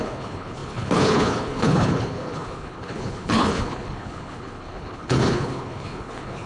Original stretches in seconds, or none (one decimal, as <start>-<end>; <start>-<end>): none